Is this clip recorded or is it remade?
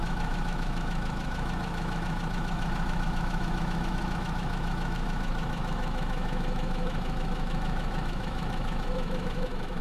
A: remade